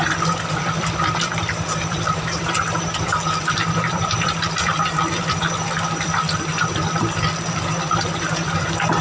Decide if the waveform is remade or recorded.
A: remade